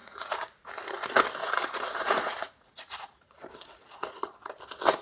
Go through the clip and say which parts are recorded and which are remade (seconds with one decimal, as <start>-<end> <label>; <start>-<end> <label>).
0.0-0.7 remade; 0.7-1.4 recorded; 1.4-4.2 remade; 4.2-5.0 recorded